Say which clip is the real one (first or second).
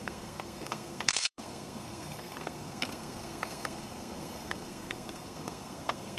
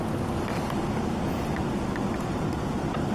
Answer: second